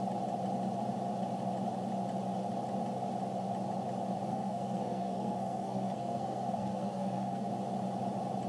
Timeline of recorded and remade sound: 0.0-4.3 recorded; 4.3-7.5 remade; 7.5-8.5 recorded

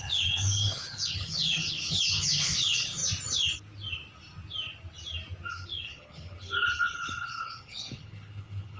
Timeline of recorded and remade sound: 0.0-3.0 remade; 3.0-5.5 recorded; 5.5-8.8 remade